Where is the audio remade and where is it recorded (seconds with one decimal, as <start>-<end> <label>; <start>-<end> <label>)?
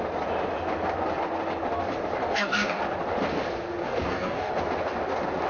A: 0.0-2.2 recorded; 2.2-2.8 remade; 2.8-3.8 recorded; 3.8-4.5 remade; 4.5-5.5 recorded